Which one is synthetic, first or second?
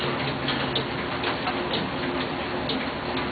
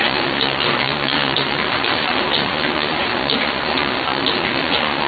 second